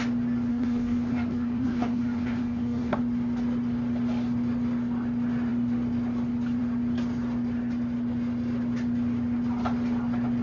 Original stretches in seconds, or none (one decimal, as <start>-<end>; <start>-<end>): 0.0-0.5; 3.0-10.4